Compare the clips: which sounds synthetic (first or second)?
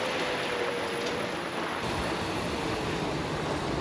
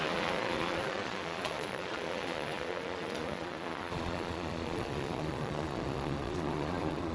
second